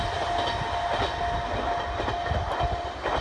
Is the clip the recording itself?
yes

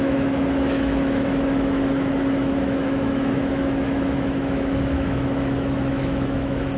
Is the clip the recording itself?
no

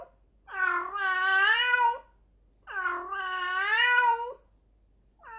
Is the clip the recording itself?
yes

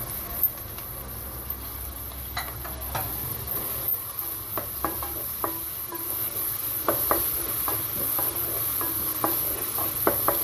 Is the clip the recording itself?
yes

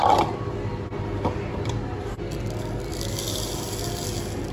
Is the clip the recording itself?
yes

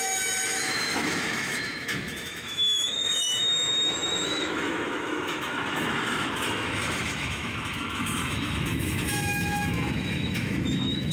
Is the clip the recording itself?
no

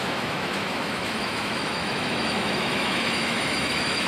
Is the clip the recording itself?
no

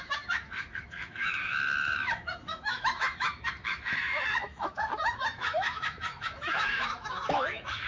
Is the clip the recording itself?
no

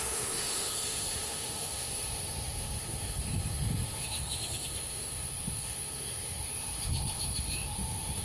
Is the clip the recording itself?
no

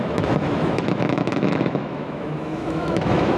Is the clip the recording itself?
no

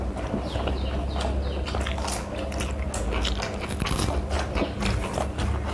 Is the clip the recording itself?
yes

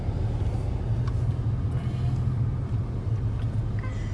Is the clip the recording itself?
yes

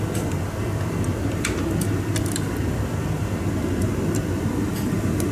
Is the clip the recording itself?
yes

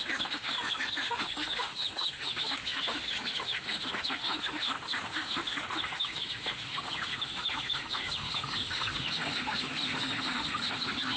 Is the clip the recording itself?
no